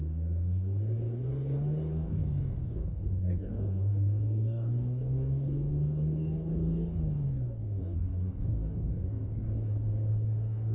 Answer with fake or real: fake